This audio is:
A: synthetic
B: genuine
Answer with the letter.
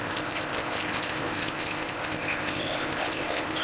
A